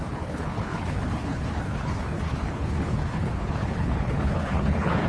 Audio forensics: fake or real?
fake